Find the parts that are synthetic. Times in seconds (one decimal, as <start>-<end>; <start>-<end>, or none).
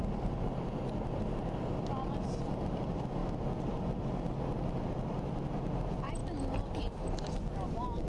none